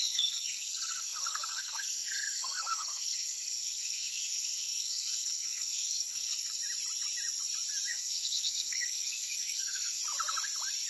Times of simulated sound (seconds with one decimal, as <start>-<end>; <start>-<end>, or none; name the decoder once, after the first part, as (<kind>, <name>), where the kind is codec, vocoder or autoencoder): 0.0-6.6 (codec, SNAC); 7.9-10.0